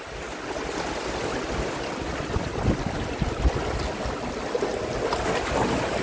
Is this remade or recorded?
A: recorded